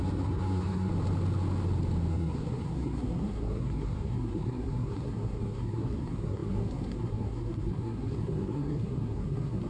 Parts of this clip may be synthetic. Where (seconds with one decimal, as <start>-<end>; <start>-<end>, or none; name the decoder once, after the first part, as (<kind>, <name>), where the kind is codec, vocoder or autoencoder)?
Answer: 0.0-0.9 (codec, SNAC); 2.1-9.7

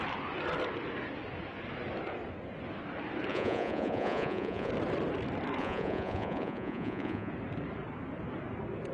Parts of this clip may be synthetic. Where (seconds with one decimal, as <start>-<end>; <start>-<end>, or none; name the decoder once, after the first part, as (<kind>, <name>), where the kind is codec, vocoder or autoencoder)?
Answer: 3.3-4.7 (vocoder, Vocos); 5.6-7.3

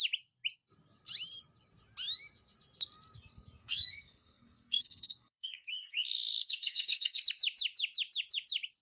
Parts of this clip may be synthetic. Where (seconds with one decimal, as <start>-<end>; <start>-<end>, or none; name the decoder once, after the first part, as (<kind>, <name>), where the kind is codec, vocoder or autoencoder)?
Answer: 3.6-7.2 (codec, SNAC)

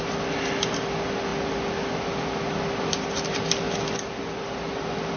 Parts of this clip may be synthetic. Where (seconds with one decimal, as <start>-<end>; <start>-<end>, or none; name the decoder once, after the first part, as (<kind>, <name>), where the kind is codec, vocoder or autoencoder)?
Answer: none

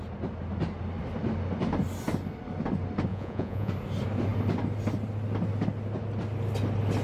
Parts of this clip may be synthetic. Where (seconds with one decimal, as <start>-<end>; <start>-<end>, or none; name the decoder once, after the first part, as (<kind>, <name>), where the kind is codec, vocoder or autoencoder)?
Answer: 3.1-3.7 (vocoder, Vocos)